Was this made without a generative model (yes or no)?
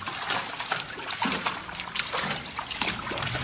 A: no